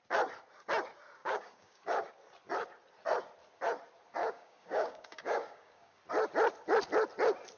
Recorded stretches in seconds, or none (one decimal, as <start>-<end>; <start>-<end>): 0.0-1.2; 2.1-4.2; 6.0-7.6